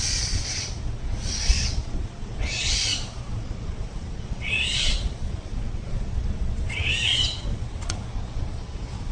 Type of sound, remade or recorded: remade